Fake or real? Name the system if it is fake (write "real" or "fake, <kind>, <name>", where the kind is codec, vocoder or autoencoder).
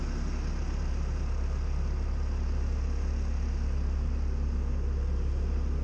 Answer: real